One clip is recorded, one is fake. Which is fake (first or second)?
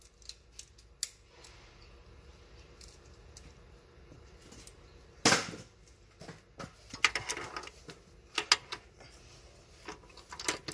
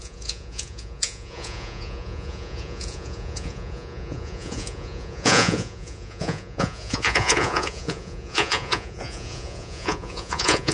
second